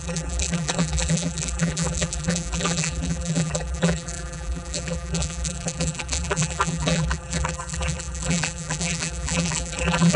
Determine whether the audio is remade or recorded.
remade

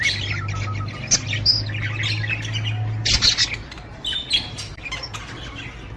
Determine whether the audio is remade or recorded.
recorded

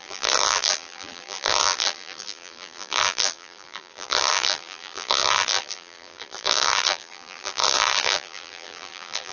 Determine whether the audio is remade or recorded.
remade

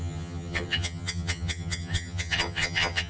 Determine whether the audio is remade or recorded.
remade